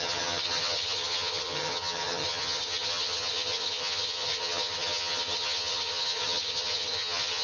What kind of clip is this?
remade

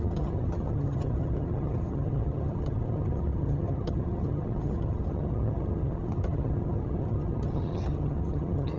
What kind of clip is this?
remade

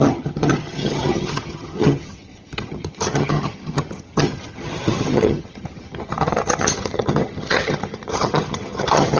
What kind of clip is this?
remade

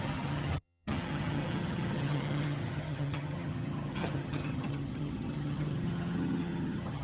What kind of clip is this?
remade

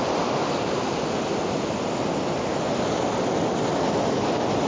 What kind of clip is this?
recorded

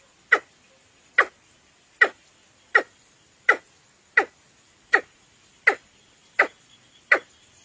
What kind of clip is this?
recorded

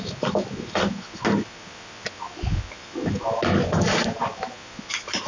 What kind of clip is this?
recorded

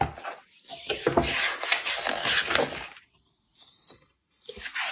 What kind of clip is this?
recorded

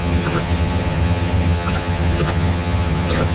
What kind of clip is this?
remade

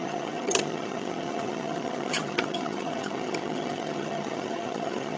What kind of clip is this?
remade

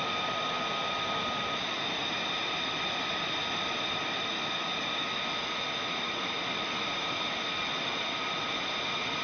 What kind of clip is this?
recorded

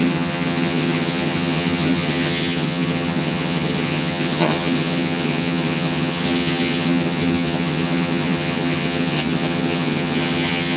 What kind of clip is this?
remade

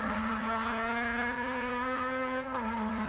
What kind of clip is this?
remade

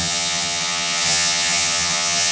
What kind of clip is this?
remade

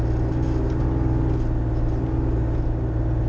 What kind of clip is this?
recorded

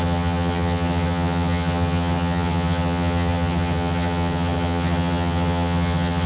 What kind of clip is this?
remade